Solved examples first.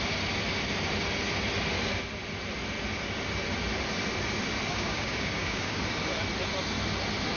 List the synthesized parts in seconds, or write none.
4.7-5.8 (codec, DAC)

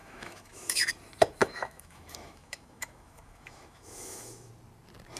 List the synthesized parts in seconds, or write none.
0.0-0.9 (autoencoder, DAC-VAE); 1.4-4.5

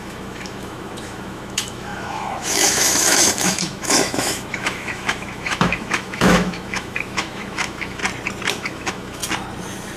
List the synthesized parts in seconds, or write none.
0.0-8.0 (autoencoder, DAC-VAE); 8.5-9.2

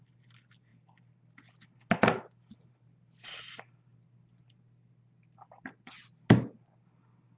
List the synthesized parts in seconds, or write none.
none

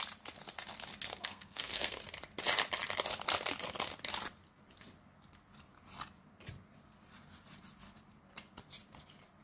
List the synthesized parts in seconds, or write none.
1.1-2.0 (codec, SNAC)

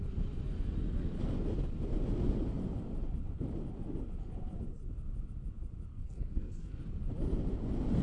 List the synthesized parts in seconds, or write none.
5.9-6.8 (codec, SNAC)